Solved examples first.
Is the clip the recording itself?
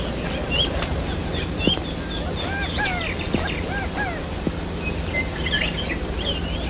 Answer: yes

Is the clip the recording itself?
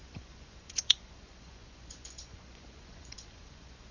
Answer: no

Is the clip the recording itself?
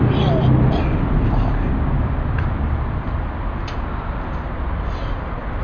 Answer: no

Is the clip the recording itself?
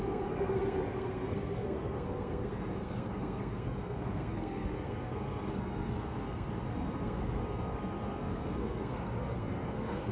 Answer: no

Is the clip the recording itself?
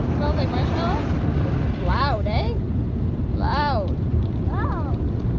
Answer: yes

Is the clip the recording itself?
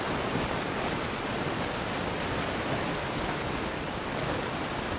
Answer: yes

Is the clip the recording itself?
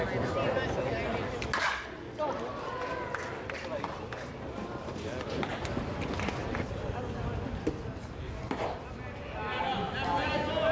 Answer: yes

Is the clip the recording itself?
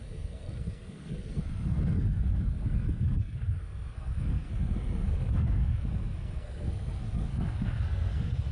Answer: no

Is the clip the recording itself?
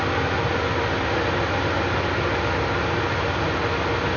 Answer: yes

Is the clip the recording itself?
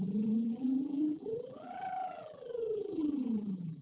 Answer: no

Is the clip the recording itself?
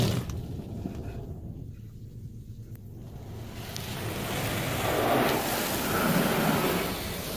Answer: yes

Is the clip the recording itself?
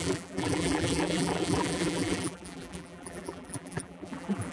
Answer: no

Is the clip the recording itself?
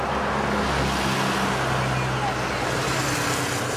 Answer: yes